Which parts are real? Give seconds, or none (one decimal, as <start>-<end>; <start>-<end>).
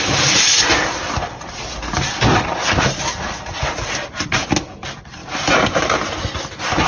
0.0-6.9